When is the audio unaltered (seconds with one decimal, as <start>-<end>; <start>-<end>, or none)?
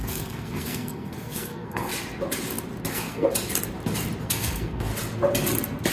1.9-2.9; 3.3-4.2; 4.9-5.9